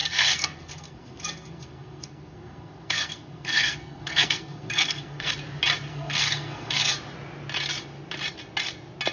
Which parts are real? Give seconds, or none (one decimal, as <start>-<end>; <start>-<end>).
5.3-5.9; 6.9-9.1